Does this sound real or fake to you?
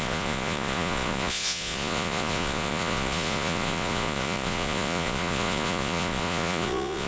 fake